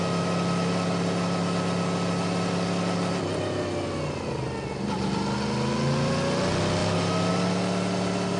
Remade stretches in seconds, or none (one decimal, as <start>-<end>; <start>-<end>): none

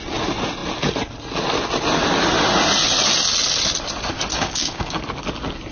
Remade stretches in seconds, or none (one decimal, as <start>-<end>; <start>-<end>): 4.3-5.0

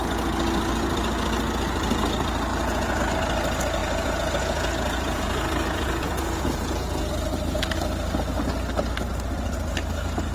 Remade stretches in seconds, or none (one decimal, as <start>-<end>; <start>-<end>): 2.5-3.0; 3.8-7.1

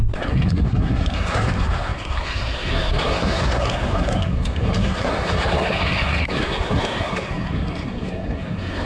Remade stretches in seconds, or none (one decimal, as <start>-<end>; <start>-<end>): 0.0-8.9

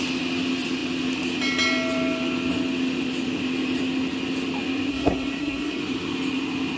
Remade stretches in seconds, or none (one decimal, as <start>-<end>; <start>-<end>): 4.9-5.8

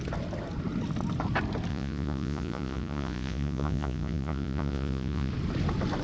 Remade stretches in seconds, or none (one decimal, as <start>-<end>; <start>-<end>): 1.7-5.3

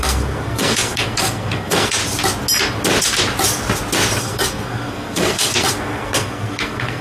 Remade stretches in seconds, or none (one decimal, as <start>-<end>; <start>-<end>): 0.0-2.0; 4.2-7.0

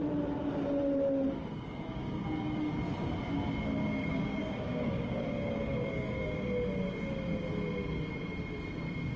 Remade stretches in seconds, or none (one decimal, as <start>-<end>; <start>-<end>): 1.5-3.1; 3.8-6.3